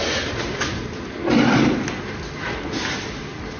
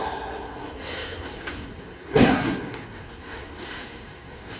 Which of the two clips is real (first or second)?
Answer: first